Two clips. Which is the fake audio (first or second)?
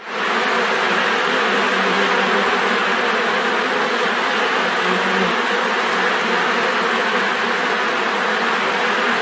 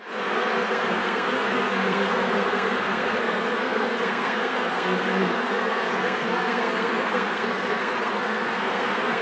second